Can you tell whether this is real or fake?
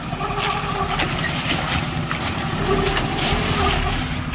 real